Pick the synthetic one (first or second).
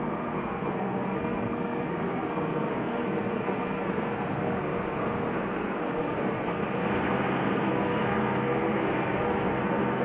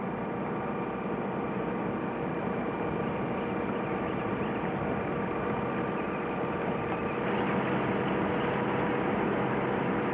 first